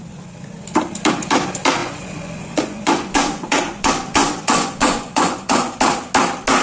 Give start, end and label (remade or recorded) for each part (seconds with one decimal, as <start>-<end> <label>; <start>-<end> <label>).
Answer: 0.0-1.8 recorded; 1.8-5.8 remade; 5.8-6.6 recorded